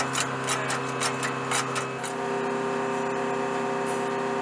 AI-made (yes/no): no